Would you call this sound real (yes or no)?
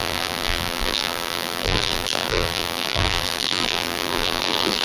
no